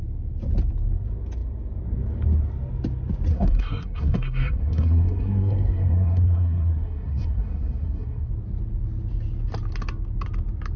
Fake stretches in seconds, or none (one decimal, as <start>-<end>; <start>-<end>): 3.3-8.3